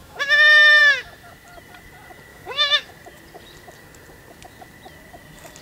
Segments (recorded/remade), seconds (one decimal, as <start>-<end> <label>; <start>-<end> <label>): 0.0-0.8 remade; 0.8-2.3 recorded; 2.3-2.9 remade; 2.9-5.6 recorded